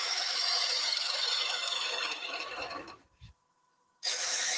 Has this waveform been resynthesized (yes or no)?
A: yes